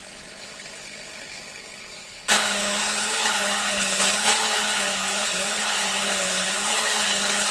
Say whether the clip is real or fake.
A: fake